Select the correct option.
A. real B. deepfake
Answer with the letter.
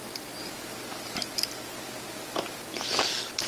A